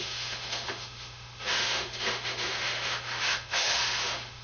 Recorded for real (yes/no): no